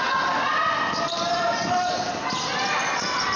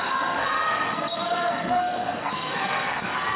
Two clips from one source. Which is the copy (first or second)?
second